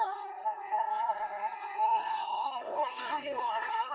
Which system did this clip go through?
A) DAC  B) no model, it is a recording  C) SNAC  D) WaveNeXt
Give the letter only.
C